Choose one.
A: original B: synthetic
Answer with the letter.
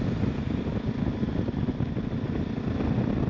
A